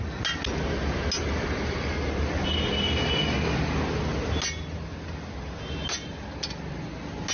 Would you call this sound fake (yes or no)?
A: no